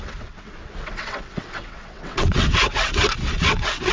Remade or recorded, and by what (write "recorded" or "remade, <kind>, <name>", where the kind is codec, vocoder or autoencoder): remade, vocoder, WaveNeXt